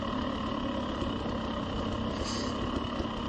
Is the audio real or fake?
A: real